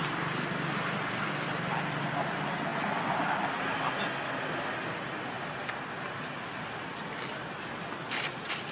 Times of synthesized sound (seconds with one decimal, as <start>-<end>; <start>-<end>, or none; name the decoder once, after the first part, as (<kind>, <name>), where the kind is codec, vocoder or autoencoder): none